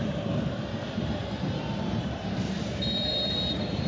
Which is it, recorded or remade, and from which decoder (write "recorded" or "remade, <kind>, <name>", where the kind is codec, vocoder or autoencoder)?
remade, vocoder, BigVGAN v2